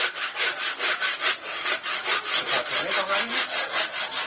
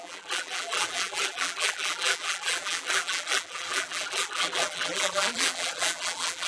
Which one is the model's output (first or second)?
second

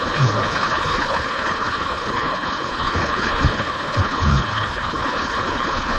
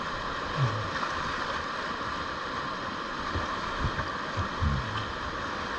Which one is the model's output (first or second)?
first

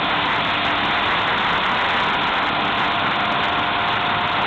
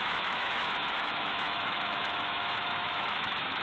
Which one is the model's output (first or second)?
second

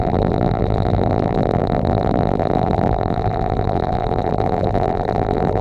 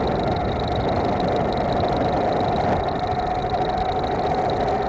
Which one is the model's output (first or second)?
first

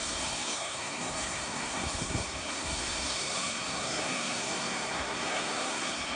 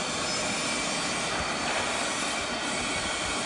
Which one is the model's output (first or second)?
first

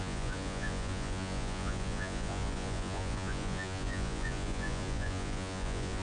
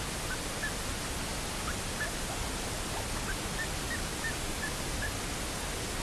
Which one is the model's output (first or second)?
first